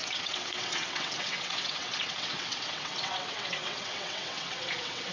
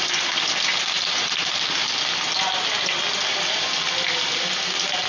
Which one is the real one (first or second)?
second